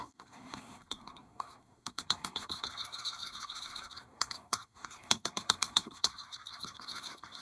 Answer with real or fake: fake